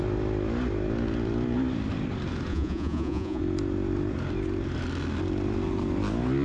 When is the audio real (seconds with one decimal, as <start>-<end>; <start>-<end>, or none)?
0.0-2.5; 3.4-6.4